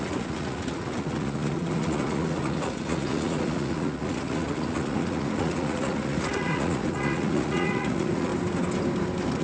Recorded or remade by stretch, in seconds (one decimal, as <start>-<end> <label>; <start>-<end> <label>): 0.0-8.3 remade; 8.3-9.4 recorded